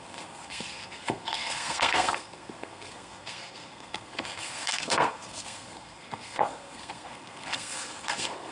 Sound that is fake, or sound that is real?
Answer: fake